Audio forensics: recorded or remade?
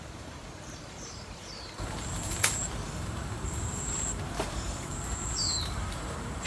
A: remade